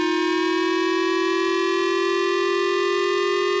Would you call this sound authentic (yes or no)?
yes